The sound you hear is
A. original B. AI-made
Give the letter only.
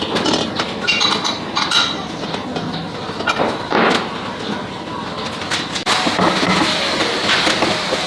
A